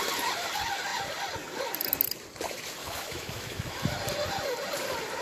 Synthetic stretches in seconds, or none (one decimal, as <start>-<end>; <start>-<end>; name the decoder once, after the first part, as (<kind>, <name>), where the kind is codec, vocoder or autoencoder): 2.8-3.8 (autoencoder, DAC-VAE)